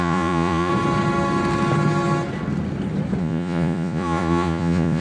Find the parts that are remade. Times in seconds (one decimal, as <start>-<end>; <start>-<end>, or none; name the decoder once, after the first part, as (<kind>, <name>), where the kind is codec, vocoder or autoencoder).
0.0-0.7 (vocoder, Vocos); 3.2-5.0